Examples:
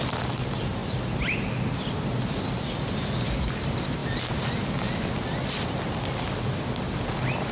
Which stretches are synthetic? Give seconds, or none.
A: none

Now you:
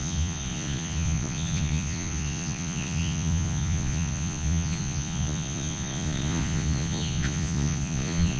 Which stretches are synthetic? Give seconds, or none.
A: 0.0-8.4 (vocoder, Vocos)

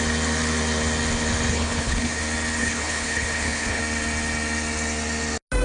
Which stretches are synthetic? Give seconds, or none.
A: 1.5-2.2 (codec, HILCodec); 2.6-3.8

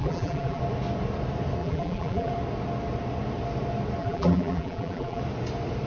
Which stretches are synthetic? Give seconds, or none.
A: 0.0-0.6 (vocoder, BigVGAN v2); 1.6-2.3; 4.0-5.2

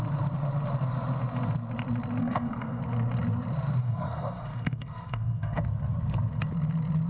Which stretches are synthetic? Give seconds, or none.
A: 2.2-2.8 (codec, SNAC); 3.8-5.6

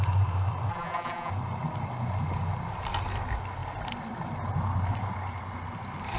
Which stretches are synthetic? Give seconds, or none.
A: 0.7-1.3 (vocoder, BigVGAN v2)

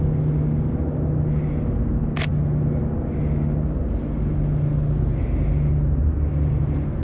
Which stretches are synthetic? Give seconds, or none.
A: none